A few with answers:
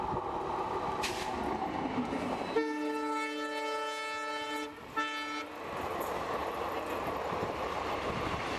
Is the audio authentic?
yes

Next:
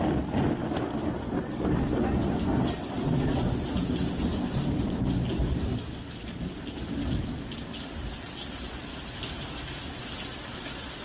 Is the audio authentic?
yes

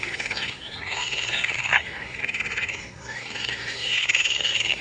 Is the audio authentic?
no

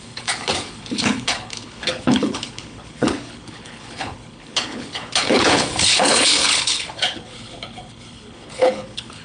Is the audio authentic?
no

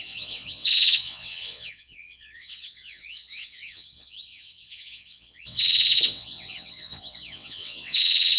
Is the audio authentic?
no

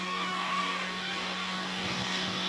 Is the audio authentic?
no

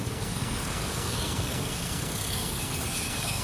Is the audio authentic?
no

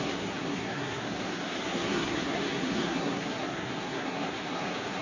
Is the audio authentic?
no